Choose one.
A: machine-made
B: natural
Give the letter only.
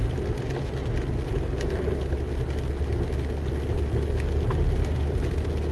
B